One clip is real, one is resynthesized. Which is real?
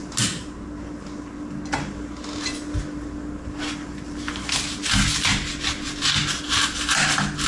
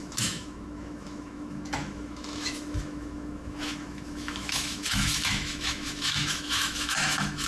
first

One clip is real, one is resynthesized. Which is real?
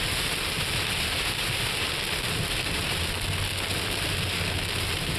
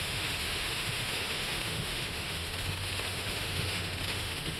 first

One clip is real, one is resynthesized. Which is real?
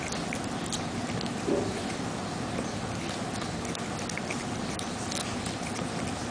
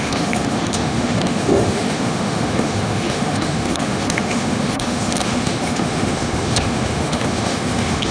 first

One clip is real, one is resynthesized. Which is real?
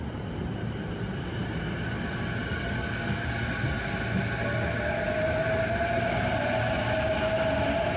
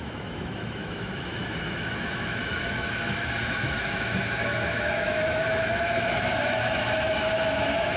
first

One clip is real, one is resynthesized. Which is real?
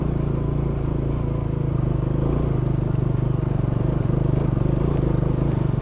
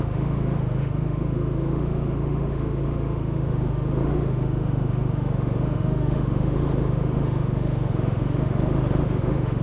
first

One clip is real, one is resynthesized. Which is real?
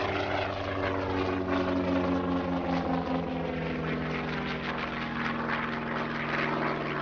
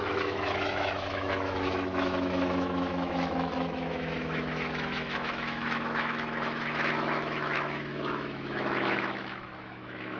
first